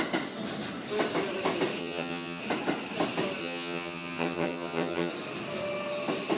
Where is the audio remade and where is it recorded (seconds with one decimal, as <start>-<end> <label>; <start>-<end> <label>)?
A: 0.0-1.8 recorded; 1.8-2.4 remade; 2.4-3.4 recorded; 3.4-5.1 remade; 5.1-6.4 recorded